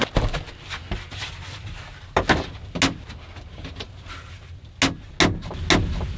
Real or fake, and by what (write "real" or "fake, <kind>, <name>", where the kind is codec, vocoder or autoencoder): real